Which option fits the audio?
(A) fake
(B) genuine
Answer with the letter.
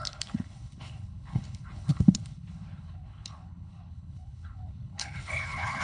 A